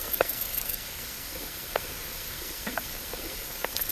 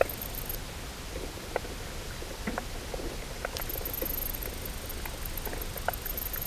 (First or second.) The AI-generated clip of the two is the first